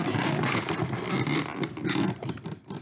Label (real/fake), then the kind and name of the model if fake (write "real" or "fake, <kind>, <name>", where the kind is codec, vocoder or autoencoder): real